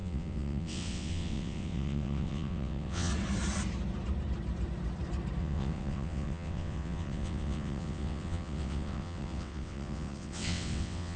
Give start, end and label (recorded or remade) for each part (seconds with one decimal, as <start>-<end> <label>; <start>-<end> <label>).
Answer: 0.0-3.1 remade; 3.1-5.4 recorded; 5.4-11.2 remade

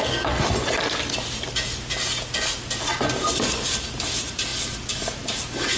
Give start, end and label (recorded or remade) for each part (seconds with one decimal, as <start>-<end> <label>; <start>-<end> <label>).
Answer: 0.0-5.8 recorded

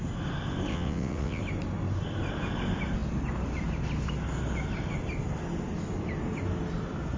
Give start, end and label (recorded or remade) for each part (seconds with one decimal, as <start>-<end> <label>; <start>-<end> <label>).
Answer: 0.0-0.7 recorded; 0.7-1.4 remade; 1.4-7.2 recorded

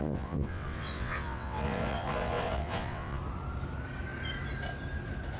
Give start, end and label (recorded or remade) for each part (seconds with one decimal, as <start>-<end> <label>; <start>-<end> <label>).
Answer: 0.0-3.2 remade; 3.2-5.4 recorded

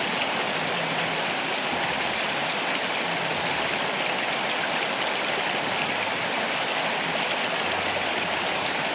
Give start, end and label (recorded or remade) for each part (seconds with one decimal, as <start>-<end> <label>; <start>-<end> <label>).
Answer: 0.0-8.9 recorded

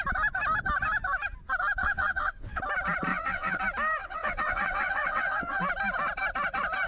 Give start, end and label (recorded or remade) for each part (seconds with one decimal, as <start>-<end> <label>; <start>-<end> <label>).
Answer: 0.0-1.8 recorded; 1.8-2.6 remade; 2.6-3.1 recorded; 3.1-3.6 remade; 3.6-4.0 recorded; 4.0-5.6 remade; 5.6-6.9 recorded

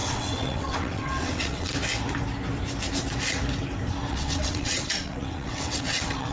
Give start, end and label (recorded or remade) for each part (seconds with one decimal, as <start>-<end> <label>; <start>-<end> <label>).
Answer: 0.0-1.7 remade; 1.7-4.1 recorded; 4.1-6.3 remade

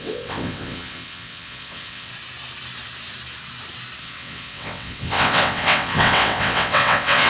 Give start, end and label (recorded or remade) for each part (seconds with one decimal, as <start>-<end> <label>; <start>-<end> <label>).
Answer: 0.0-2.1 remade; 2.1-4.0 recorded; 4.0-7.3 remade